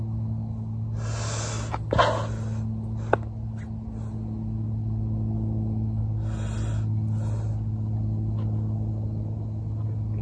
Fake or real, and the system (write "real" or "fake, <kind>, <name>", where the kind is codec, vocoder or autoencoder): real